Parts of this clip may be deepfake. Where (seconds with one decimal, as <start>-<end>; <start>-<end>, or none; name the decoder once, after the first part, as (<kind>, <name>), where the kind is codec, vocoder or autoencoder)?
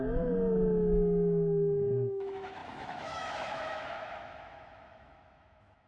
0.0-5.9 (autoencoder, DAC-VAE)